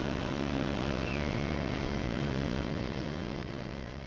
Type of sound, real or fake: fake